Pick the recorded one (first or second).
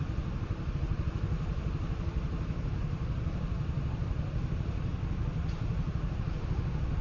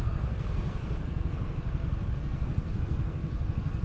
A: first